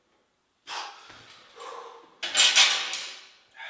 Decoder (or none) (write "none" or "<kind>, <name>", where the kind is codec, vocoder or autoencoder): none